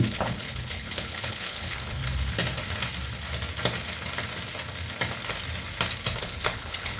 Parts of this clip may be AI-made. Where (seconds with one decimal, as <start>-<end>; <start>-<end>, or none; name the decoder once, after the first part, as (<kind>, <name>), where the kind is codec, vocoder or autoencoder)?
0.0-2.0 (codec, HILCodec); 6.2-7.0